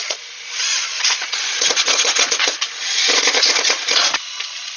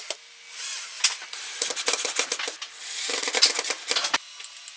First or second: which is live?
second